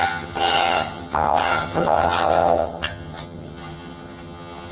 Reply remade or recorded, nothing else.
remade